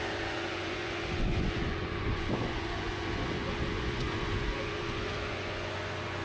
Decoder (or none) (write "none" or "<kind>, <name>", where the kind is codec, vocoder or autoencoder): vocoder, Vocos